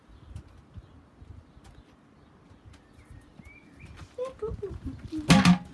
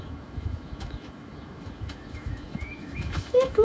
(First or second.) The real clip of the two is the first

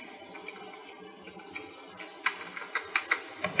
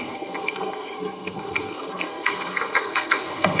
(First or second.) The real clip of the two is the first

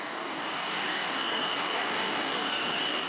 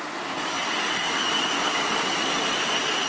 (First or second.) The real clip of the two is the second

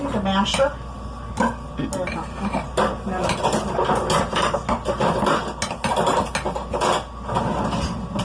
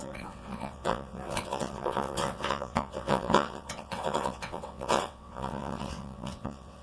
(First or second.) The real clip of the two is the first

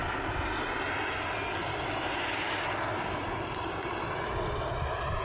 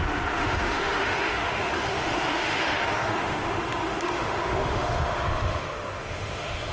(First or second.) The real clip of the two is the first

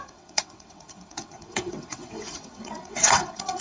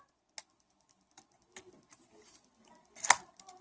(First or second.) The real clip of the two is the second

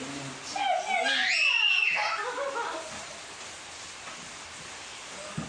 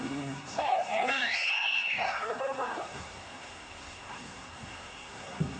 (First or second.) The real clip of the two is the first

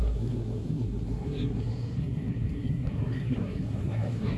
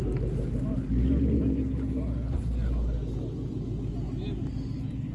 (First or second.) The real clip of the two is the second